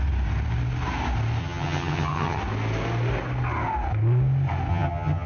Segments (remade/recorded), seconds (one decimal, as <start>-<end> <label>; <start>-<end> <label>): 0.0-1.4 recorded; 1.4-2.4 remade; 2.4-4.7 recorded; 4.7-5.3 remade